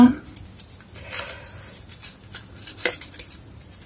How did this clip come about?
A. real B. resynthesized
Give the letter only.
A